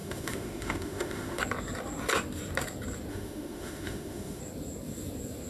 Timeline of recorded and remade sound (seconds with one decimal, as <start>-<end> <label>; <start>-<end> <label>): 0.0-1.4 remade; 1.4-3.1 recorded; 3.1-4.4 remade; 4.4-5.5 recorded